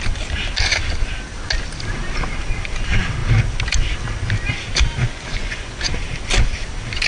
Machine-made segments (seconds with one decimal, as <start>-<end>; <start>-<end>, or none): 5.0-5.9